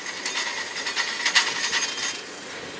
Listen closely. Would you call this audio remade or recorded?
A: recorded